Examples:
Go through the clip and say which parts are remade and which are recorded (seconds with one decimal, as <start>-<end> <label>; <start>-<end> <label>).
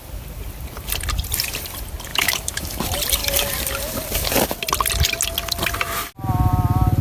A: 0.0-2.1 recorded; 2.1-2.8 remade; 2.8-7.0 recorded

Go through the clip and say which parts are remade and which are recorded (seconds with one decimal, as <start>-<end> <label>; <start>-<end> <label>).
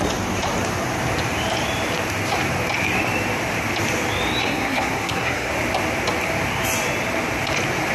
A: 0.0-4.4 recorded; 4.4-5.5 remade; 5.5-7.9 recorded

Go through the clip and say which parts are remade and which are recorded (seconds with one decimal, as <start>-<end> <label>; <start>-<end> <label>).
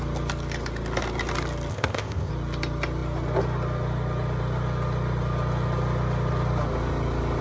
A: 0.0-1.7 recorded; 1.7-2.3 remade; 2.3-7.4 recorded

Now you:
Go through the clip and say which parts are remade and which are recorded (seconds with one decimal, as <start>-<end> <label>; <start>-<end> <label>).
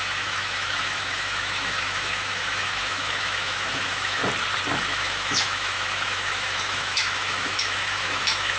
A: 0.0-4.2 remade; 4.2-4.8 recorded; 4.8-8.6 remade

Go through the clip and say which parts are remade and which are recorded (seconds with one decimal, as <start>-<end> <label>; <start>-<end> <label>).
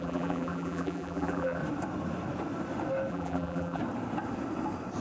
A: 0.0-1.6 remade; 1.6-3.1 recorded; 3.1-3.8 remade; 3.8-5.0 recorded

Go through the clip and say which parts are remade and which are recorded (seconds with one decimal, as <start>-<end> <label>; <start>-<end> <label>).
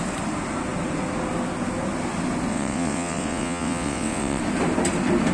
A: 0.0-2.5 recorded; 2.5-4.4 remade; 4.4-5.3 recorded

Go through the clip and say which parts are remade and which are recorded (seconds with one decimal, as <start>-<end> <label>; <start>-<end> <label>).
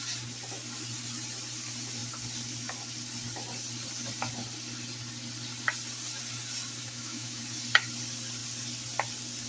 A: 0.0-6.8 recorded; 6.8-7.4 remade; 7.4-9.5 recorded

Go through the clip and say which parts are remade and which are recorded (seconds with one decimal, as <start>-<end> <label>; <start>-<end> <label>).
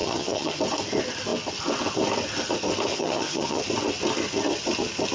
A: 0.0-0.6 remade; 0.6-2.9 recorded; 2.9-3.6 remade; 3.6-5.1 recorded